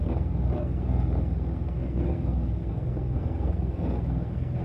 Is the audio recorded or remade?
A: remade